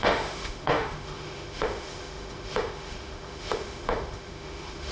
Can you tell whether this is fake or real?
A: fake